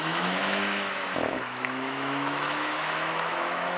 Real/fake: fake